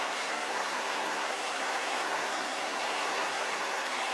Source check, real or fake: fake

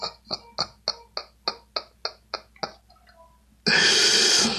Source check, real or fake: real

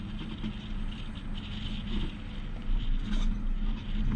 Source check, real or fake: real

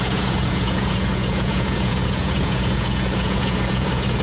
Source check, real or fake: fake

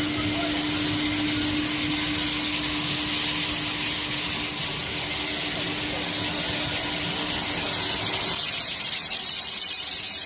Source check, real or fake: real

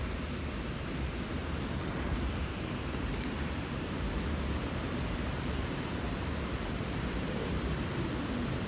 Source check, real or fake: fake